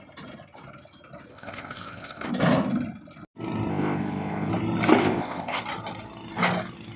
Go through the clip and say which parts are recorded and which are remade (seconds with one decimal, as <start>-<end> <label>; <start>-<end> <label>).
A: 0.0-1.3 recorded; 1.3-2.3 remade; 2.3-3.7 recorded; 3.7-4.5 remade; 4.5-5.0 recorded; 5.0-5.6 remade; 5.6-7.0 recorded